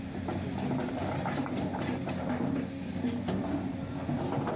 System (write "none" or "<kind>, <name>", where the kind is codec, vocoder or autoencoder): none